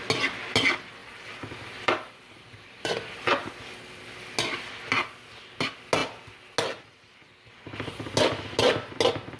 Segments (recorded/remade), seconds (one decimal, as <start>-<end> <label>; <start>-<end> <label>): 0.0-1.0 recorded; 1.0-3.5 remade; 3.5-9.4 recorded